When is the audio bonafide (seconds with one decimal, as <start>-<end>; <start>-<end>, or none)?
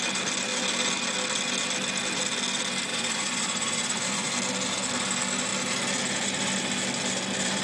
0.0-2.9; 4.3-7.6